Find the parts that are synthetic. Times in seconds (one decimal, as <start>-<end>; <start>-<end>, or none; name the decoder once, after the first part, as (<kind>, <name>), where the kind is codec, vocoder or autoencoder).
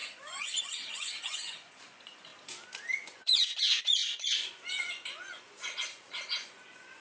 0.0-2.3 (vocoder, Vocos); 3.0-7.0